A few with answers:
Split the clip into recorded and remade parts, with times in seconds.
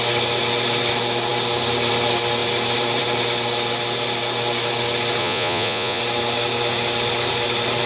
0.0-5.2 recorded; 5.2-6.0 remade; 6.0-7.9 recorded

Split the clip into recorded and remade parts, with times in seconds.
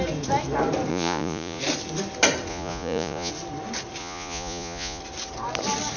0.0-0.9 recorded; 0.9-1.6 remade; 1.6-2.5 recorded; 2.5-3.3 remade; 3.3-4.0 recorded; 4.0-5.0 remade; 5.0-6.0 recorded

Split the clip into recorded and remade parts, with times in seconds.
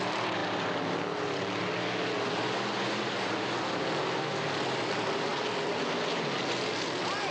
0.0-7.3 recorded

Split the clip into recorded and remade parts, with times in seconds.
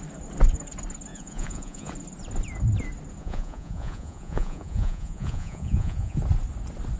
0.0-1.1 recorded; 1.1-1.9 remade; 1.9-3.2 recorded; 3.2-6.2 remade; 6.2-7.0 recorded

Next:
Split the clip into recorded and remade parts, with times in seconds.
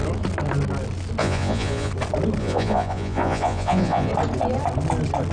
0.0-1.2 recorded; 1.2-1.9 remade; 1.9-2.4 recorded; 2.4-4.1 remade; 4.1-5.3 recorded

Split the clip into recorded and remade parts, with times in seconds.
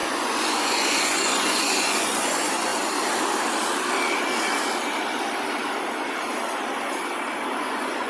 0.0-2.7 remade; 2.7-7.6 recorded; 7.6-8.1 remade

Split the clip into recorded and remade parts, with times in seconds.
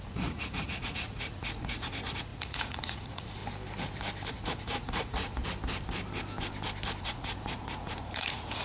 0.0-3.4 remade; 3.4-4.3 recorded; 4.3-5.4 remade; 5.4-7.0 recorded; 7.0-8.6 remade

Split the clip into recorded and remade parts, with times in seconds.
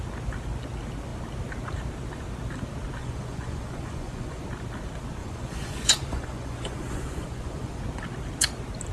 0.0-3.0 recorded; 3.0-4.4 remade; 4.4-5.2 recorded; 5.2-7.8 remade; 7.8-8.9 recorded